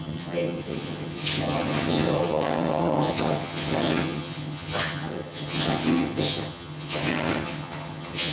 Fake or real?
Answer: fake